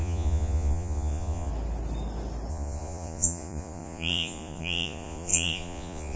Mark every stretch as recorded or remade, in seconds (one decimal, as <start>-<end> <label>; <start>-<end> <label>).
0.0-1.5 remade; 1.5-2.5 recorded; 2.5-6.2 remade